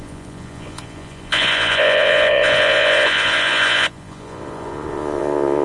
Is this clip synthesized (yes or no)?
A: yes